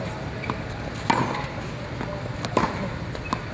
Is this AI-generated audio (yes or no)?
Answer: no